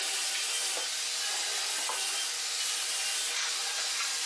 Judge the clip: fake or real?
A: real